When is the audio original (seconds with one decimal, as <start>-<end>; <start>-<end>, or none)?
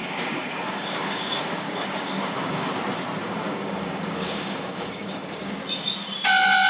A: 2.7-3.2; 5.5-6.7